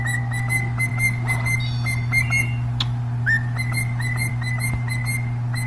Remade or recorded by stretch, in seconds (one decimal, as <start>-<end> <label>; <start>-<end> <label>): 0.0-0.9 recorded; 0.9-4.3 remade; 4.3-5.7 recorded